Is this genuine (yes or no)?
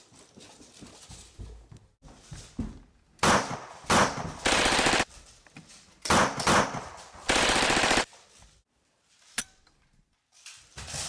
no